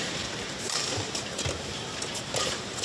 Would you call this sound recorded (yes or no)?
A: no